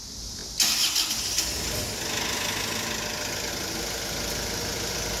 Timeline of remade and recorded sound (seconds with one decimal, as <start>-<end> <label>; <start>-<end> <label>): 0.0-5.2 recorded